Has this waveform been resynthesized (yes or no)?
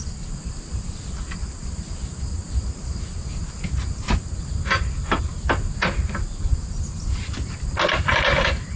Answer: no